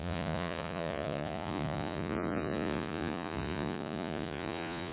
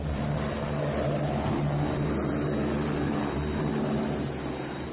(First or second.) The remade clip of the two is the first